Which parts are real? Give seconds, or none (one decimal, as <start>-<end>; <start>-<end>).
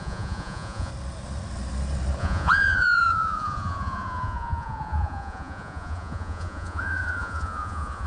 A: 0.9-2.2